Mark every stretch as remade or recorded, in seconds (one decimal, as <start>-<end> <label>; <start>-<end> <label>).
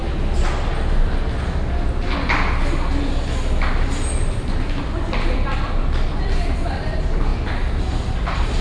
0.0-4.8 recorded; 4.8-7.3 remade; 7.3-7.8 recorded; 7.8-8.6 remade